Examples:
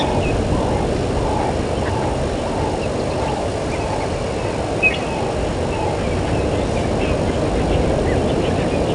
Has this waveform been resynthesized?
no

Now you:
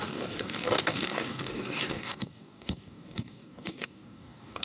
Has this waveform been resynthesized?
yes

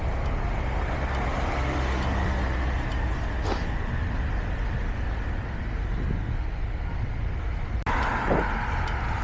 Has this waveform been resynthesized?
no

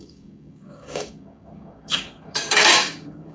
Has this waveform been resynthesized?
yes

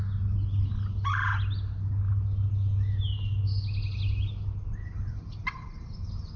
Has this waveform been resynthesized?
no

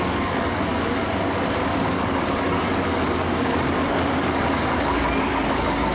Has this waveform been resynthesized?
yes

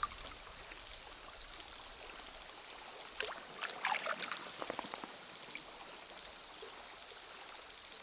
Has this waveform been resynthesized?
no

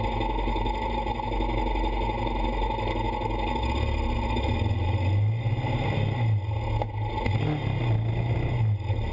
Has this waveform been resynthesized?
no